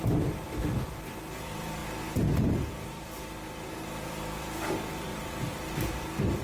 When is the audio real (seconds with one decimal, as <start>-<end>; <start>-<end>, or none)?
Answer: none